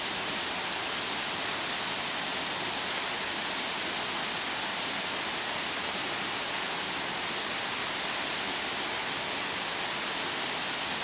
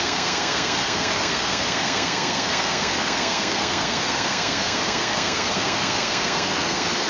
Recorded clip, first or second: first